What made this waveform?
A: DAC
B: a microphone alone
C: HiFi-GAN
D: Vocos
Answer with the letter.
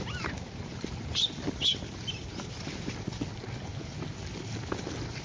B